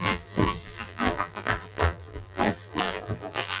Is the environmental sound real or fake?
fake